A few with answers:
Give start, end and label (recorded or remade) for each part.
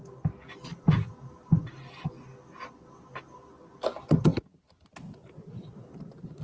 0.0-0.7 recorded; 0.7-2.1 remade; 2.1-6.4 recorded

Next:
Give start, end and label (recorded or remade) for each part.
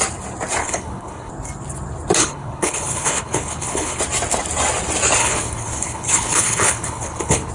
0.0-0.6 recorded; 0.6-1.3 remade; 1.3-2.2 recorded; 2.2-4.0 remade; 4.0-5.2 recorded; 5.2-7.5 remade